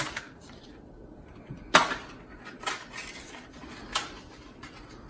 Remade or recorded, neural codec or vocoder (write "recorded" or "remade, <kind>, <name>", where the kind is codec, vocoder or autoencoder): recorded